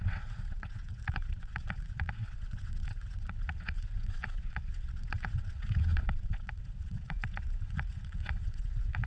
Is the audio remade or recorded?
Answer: remade